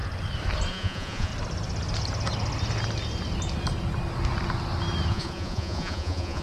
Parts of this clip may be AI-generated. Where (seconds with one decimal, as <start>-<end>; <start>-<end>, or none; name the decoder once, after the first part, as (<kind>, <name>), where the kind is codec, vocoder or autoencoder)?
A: 0.7-1.3 (vocoder, Vocos); 5.1-6.4